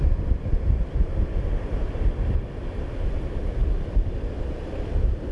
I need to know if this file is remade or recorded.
remade